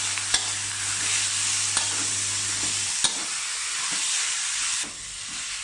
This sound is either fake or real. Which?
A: real